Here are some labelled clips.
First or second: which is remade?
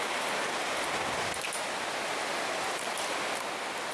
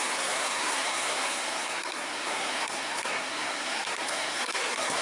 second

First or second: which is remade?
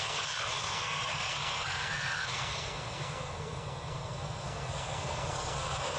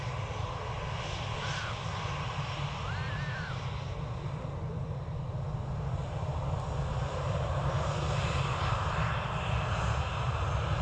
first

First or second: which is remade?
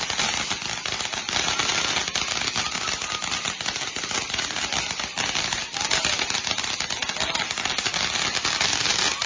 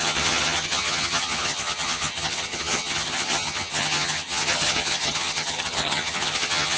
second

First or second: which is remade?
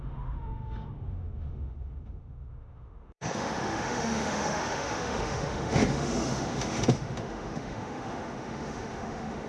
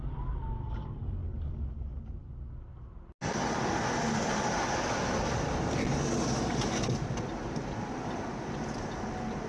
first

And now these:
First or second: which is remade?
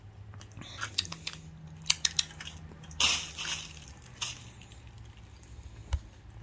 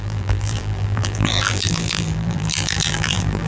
second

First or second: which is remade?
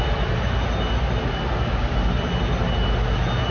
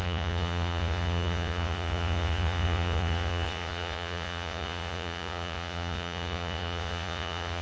second